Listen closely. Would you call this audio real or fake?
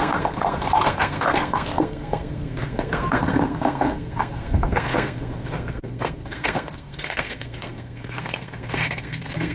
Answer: fake